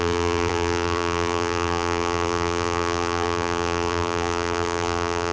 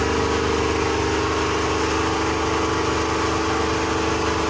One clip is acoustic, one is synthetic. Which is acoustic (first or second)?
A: second